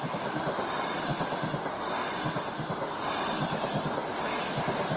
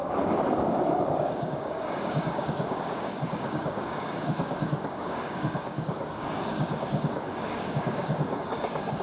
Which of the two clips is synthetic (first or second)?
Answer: second